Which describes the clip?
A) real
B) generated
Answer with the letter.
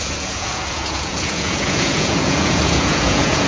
B